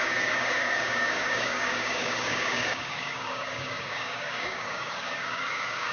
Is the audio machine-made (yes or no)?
yes